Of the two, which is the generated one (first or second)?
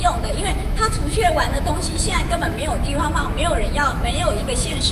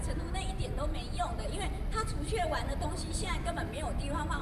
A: first